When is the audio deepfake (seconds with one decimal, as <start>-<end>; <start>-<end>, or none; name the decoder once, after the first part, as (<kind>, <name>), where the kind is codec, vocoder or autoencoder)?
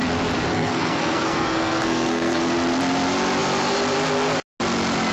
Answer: 0.5-2.4 (codec, SNAC)